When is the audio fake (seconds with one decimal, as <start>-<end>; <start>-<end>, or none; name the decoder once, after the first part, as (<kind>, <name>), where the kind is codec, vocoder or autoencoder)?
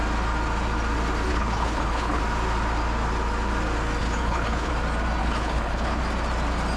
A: 1.3-2.2 (codec, HILCodec); 4.0-4.7; 5.2-6.0